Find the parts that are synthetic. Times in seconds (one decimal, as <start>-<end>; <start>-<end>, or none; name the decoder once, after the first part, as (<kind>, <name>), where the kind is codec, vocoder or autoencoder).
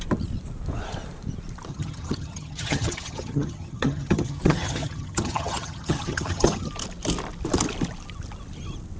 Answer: 1.7-6.7 (vocoder, HiFi-GAN)